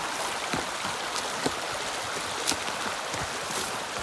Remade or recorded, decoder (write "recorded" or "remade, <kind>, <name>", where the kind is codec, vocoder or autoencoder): recorded